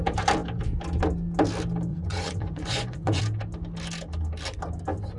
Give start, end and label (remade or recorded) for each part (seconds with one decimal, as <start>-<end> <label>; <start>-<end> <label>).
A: 0.0-1.9 recorded; 1.9-3.2 remade; 3.2-5.2 recorded